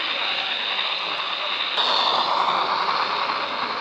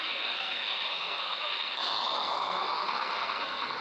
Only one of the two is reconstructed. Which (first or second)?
second